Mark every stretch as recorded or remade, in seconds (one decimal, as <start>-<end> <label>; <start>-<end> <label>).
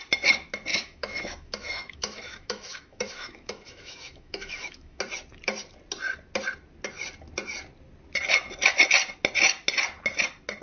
0.0-0.7 recorded; 0.7-5.0 remade; 5.0-10.6 recorded